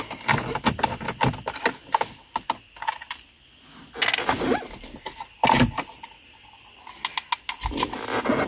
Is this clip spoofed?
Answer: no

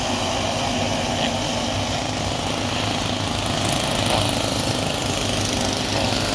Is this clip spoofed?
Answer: no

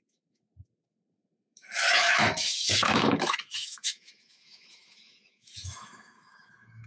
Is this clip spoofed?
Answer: yes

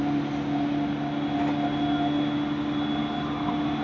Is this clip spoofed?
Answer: no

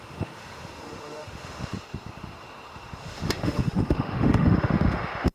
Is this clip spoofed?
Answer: yes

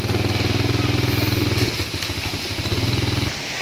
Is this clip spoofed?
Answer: no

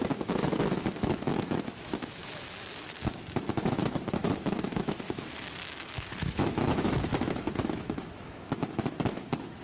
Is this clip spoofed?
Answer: yes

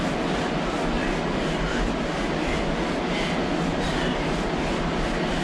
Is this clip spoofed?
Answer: no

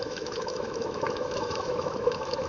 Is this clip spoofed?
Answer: yes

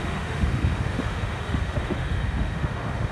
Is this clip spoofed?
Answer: yes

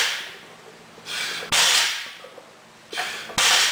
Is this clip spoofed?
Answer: no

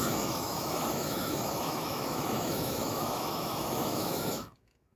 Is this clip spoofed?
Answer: yes